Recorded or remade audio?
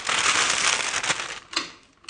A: recorded